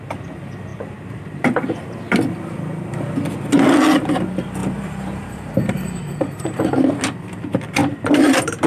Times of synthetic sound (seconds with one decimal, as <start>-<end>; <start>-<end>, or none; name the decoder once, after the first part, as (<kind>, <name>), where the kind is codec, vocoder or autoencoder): 0.7-2.0 (vocoder, BigVGAN v2); 4.6-6.6; 7.8-8.7